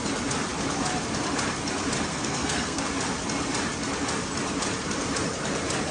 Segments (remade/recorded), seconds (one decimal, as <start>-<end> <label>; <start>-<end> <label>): 0.0-2.1 recorded; 2.1-2.8 remade; 2.8-5.9 recorded

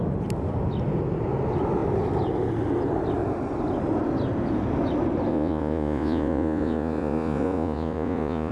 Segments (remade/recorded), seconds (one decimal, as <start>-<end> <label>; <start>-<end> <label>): 0.0-5.3 recorded; 5.3-8.5 remade